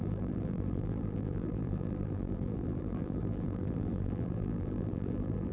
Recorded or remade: remade